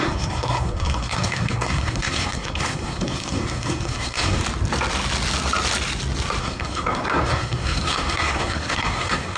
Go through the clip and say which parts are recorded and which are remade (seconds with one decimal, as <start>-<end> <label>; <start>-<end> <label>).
0.0-4.4 remade; 4.4-6.4 recorded; 6.4-9.4 remade